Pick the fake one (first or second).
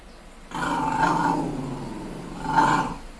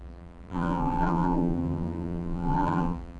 second